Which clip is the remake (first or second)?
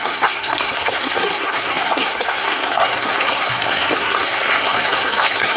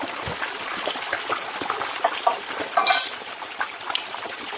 first